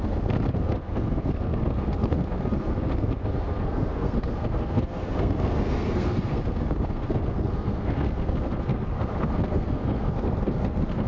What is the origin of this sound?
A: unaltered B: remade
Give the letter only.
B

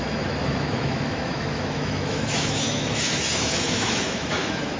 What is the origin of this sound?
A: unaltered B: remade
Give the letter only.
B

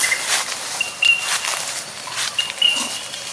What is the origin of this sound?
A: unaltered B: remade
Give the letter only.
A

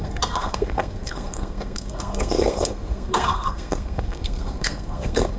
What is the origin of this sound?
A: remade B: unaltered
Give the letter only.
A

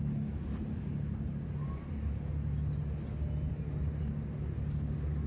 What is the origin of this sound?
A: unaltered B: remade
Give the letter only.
A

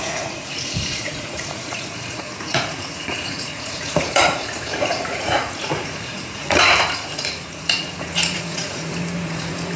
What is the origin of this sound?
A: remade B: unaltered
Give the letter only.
A